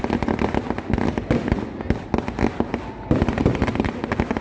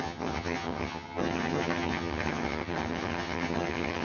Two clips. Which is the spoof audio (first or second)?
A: second